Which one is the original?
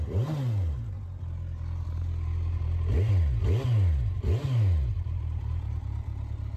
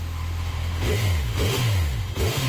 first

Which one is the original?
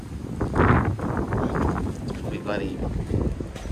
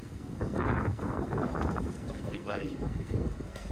first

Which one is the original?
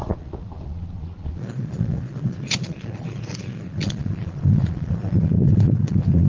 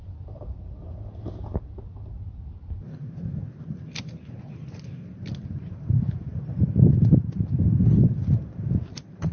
second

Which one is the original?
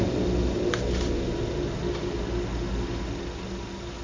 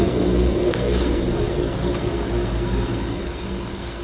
first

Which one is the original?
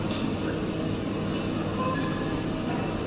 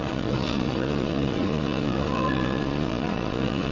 first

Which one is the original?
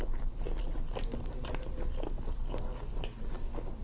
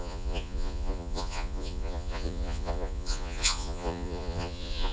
first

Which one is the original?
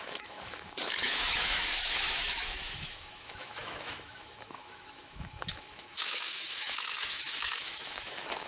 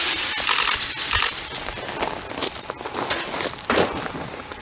second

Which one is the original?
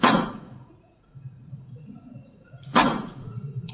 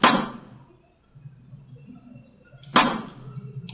second